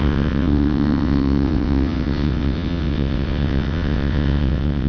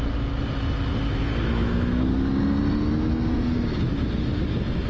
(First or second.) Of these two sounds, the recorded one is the second